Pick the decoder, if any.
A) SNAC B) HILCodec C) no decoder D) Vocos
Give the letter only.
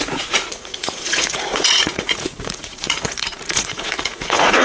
D